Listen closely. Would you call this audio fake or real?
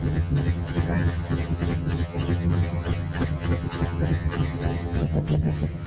fake